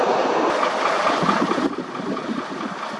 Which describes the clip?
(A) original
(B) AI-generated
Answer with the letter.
A